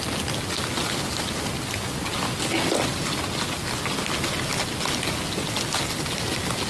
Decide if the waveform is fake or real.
real